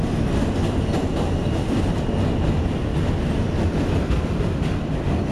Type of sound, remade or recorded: recorded